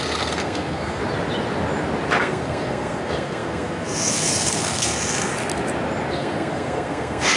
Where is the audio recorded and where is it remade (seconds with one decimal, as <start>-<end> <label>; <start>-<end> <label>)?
0.0-1.0 remade; 1.0-2.2 recorded; 2.2-5.3 remade; 5.3-6.1 recorded; 6.1-7.4 remade